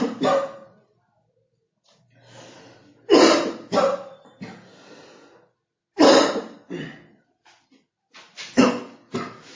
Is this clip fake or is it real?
real